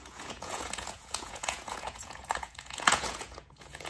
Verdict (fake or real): fake